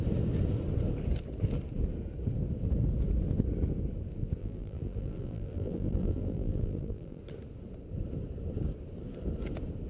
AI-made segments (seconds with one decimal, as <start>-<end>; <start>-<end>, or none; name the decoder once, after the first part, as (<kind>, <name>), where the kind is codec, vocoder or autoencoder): 4.4-7.2 (vocoder, BigVGAN v2)